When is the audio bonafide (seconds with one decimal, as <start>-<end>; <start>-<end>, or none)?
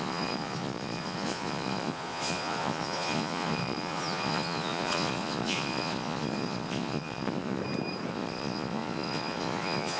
7.6-8.1